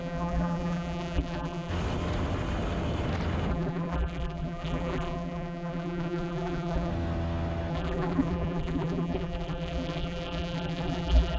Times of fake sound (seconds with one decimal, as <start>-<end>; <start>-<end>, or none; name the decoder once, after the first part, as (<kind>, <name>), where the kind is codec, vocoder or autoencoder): 0.0-1.7 (vocoder, BigVGAN v2); 3.5-6.9; 7.7-11.4